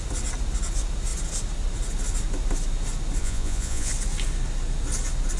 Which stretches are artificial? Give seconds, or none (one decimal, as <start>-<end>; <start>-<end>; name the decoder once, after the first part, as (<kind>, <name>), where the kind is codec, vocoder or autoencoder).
3.2-3.9 (vocoder, Vocos)